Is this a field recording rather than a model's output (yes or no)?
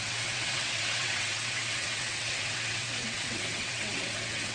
no